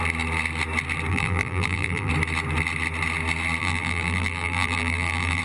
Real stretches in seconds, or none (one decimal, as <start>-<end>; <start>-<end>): 0.0-1.1; 2.1-3.6